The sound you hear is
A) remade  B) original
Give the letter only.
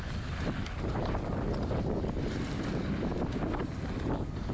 B